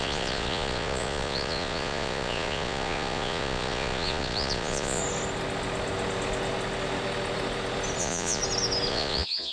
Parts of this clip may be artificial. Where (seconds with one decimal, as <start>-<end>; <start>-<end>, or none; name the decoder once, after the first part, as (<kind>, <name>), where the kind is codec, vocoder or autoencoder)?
0.0-5.0 (vocoder, Vocos); 8.0-8.4; 8.9-9.5